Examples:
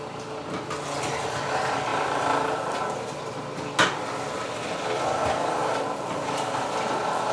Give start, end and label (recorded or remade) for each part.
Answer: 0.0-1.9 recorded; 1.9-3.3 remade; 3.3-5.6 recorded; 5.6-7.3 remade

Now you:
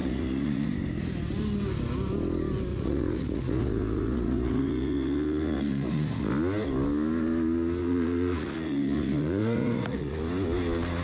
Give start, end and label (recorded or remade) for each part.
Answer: 0.0-0.7 remade; 0.7-2.7 recorded; 2.7-6.3 remade; 6.3-7.8 recorded; 7.8-10.2 remade; 10.2-11.0 recorded

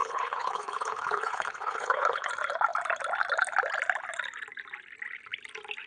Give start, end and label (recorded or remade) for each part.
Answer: 0.0-2.3 remade; 2.3-5.9 recorded

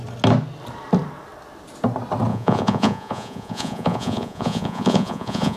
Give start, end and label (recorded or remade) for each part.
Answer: 0.0-2.3 recorded; 2.3-5.6 remade